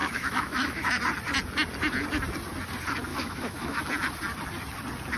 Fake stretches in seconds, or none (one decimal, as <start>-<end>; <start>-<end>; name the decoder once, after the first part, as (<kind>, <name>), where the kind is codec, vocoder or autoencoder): 0.0-1.0 (autoencoder, DAC-VAE); 3.1-3.8